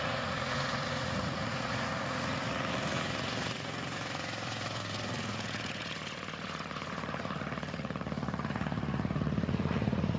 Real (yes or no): no